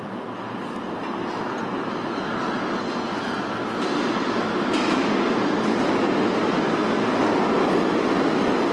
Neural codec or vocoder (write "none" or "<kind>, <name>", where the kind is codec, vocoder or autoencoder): none